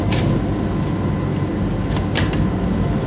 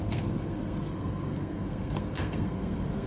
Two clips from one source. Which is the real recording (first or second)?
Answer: first